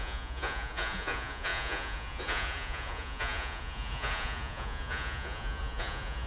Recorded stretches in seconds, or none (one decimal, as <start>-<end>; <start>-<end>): none